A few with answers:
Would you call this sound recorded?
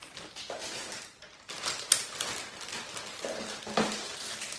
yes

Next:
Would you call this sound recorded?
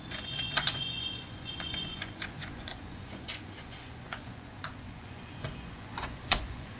no